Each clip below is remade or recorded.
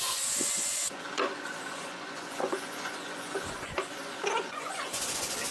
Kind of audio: remade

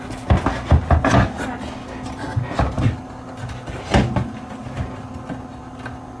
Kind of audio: recorded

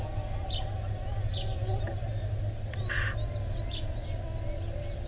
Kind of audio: recorded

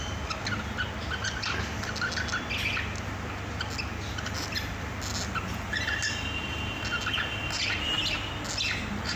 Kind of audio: recorded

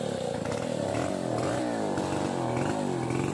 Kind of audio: recorded